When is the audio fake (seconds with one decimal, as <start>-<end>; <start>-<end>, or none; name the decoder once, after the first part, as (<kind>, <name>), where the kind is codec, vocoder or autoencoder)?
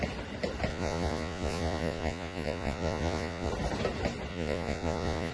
0.7-3.5 (vocoder, Vocos); 4.3-5.3